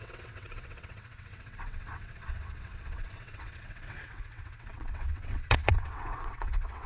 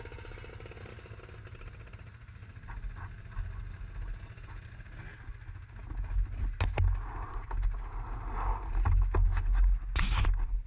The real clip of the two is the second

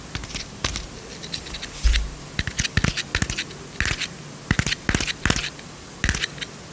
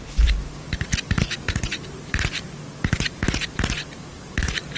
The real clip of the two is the first